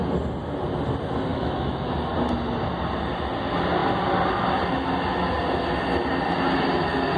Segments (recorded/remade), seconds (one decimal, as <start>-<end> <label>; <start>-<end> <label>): 0.0-1.3 recorded; 1.3-1.9 remade; 1.9-7.2 recorded